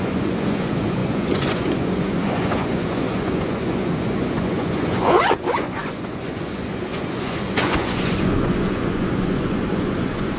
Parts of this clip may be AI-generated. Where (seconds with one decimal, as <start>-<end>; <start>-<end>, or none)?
0.0-10.4